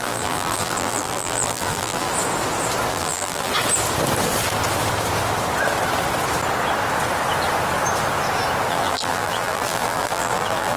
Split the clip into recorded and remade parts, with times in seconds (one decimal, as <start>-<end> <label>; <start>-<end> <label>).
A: 0.0-2.1 remade; 2.1-2.9 recorded; 2.9-3.5 remade; 3.5-8.7 recorded; 8.7-10.8 remade